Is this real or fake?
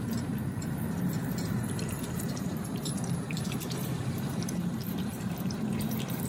fake